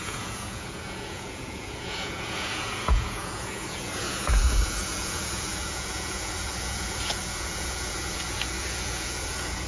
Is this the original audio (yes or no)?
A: no